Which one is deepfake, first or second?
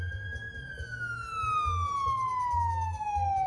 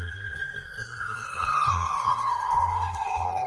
second